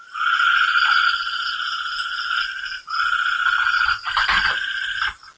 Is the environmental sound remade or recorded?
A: recorded